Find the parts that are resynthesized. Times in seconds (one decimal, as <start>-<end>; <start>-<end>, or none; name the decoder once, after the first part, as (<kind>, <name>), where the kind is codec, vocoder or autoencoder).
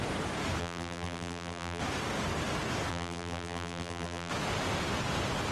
0.6-1.8 (vocoder, BigVGAN v2); 2.9-4.3